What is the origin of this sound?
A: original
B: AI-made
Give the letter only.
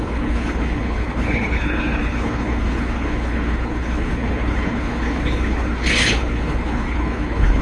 B